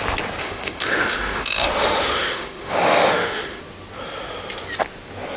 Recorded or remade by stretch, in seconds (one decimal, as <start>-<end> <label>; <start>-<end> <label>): 0.0-0.4 recorded; 0.4-3.6 remade; 3.6-5.4 recorded